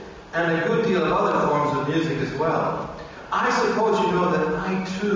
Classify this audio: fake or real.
real